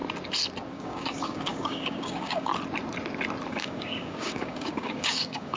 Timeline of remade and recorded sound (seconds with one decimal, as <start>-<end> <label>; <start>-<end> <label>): 0.0-0.7 recorded; 0.7-2.5 remade; 2.5-3.5 recorded; 3.5-5.6 remade